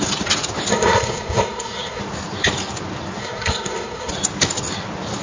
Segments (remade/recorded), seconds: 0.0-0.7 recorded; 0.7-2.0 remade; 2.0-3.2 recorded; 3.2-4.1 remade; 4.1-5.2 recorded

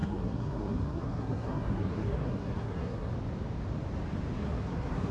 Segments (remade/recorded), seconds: 0.0-3.1 remade; 3.1-4.4 recorded; 4.4-5.1 remade

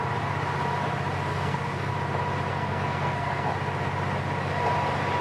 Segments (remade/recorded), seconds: 0.0-1.3 recorded; 1.3-1.9 remade; 1.9-2.5 recorded; 2.5-3.5 remade; 3.5-5.2 recorded

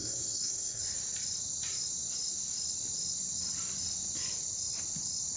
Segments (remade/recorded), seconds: 0.0-0.8 remade; 0.8-5.4 recorded